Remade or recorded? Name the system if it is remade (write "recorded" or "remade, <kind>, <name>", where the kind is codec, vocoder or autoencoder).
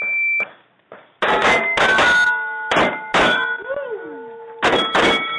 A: recorded